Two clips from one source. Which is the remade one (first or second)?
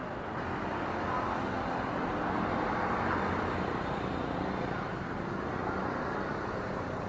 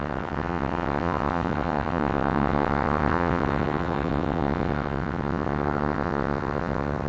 second